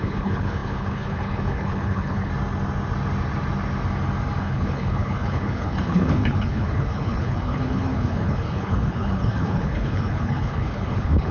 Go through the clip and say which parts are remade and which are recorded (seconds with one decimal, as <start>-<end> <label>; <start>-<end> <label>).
0.0-2.3 remade; 2.3-4.4 recorded; 4.4-11.3 remade